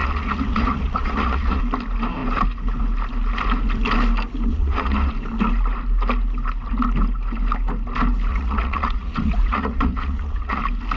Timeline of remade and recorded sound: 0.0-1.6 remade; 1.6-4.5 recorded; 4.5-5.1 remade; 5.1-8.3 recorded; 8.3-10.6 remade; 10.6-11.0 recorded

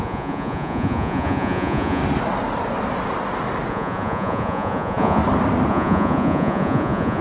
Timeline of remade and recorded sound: 0.0-2.0 remade; 2.0-3.7 recorded; 3.7-5.2 remade; 5.2-5.7 recorded; 5.7-7.2 remade

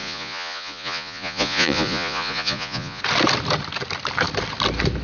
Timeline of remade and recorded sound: 0.0-3.0 remade; 3.0-5.0 recorded

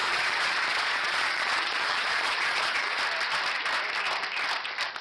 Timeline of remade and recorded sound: 0.0-3.0 remade; 3.0-5.0 recorded